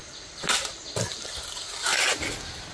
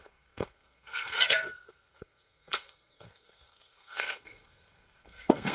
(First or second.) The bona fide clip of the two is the first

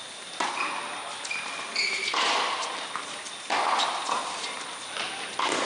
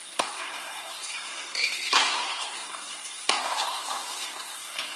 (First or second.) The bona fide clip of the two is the first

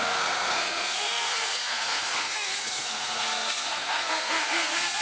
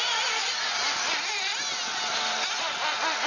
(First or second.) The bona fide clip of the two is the second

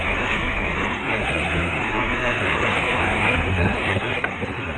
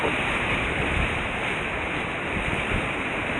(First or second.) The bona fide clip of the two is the second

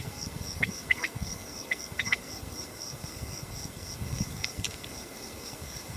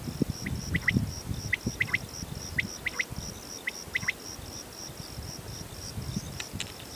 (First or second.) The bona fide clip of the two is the second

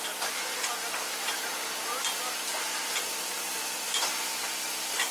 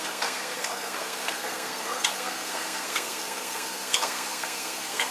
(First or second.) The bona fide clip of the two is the first